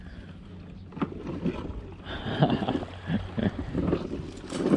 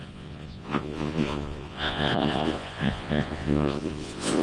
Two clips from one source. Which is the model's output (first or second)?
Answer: second